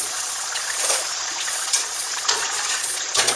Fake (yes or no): yes